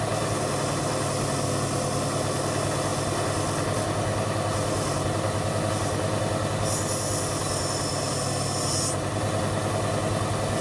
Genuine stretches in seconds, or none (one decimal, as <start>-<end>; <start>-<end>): 0.0-10.6